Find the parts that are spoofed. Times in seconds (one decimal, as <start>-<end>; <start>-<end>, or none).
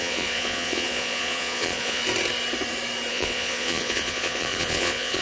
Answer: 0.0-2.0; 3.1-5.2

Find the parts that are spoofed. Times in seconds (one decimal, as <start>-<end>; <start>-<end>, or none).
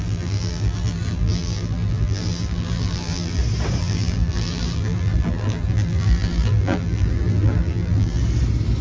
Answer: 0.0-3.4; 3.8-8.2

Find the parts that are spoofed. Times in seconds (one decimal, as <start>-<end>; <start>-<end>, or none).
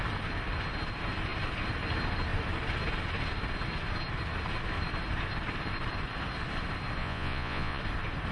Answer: 7.0-7.8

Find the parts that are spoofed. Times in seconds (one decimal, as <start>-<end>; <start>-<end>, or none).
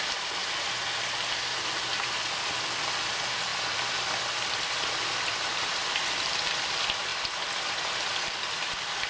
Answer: none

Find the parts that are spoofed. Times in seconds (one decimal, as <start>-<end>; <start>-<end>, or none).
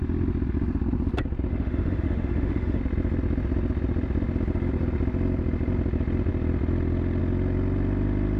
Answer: 1.5-2.8